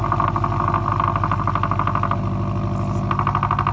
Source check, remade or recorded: recorded